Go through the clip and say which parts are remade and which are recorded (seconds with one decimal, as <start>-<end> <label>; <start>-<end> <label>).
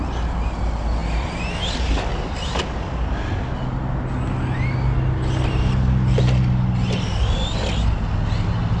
0.0-8.8 recorded